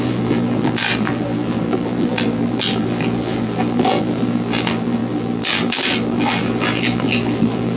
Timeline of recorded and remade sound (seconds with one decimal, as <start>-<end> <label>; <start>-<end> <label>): 0.0-7.8 remade